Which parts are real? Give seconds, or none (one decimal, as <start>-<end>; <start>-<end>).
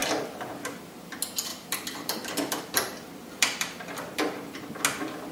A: 0.5-1.5; 4.7-5.3